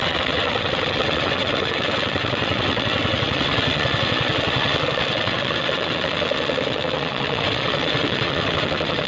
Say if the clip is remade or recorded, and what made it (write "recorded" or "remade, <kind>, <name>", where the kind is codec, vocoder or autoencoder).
remade, vocoder, WaveNeXt